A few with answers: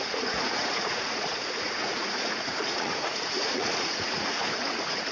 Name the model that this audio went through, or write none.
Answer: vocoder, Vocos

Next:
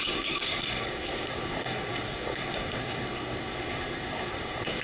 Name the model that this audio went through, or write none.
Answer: codec, SNAC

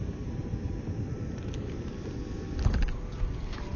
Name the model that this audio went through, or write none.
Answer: none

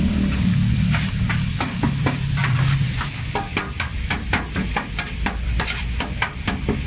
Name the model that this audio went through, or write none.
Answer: vocoder, BigVGAN v2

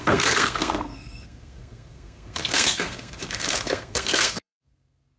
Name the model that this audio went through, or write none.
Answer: codec, SNAC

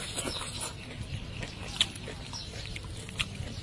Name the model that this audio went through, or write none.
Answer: none